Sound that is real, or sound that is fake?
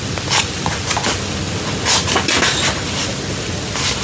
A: real